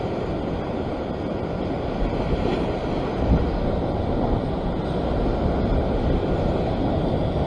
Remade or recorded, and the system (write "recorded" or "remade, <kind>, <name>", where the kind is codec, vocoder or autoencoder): recorded